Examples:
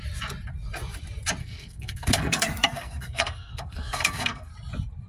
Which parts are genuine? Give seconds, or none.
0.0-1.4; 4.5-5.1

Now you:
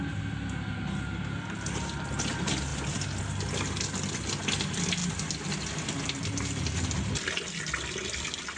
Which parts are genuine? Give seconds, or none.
0.0-8.6